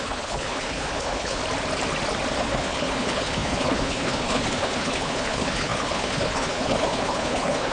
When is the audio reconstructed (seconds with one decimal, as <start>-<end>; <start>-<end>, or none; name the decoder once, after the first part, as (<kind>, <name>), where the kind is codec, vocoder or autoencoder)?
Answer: 0.0-1.4 (codec, HILCodec); 2.4-7.7